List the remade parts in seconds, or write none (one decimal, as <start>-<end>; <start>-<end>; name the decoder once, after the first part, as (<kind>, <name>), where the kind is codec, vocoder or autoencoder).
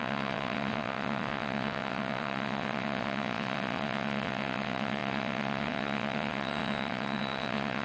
0.0-7.8 (vocoder, WaveNeXt)